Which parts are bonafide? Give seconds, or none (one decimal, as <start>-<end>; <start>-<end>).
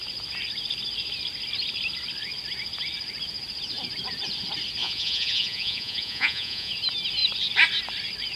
0.0-4.8; 6.7-8.4